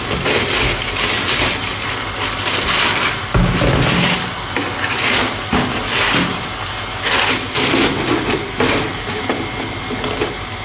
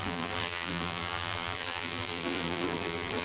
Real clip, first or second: first